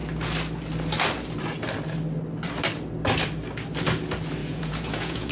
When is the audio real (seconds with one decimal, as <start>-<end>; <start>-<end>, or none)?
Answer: 0.0-4.4